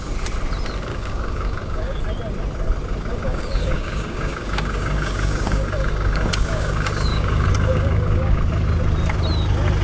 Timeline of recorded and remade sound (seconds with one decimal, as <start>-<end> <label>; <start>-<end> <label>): 0.0-0.9 recorded; 0.9-2.0 remade; 2.0-3.1 recorded; 3.1-8.4 remade; 8.4-9.8 recorded